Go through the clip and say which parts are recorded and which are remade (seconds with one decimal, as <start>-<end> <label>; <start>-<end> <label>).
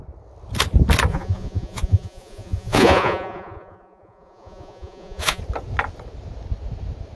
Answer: 0.0-1.1 recorded; 1.1-5.4 remade; 5.4-7.2 recorded